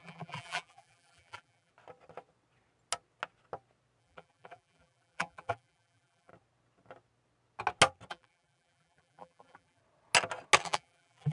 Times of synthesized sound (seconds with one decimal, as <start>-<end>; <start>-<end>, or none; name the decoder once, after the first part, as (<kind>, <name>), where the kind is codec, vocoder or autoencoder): 0.0-1.7 (vocoder, BigVGAN v2); 4.0-6.3; 8.1-9.8; 10.6-11.3